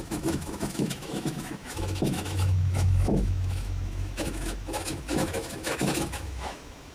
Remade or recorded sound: remade